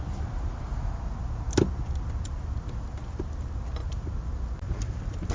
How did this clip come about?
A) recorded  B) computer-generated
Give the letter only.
A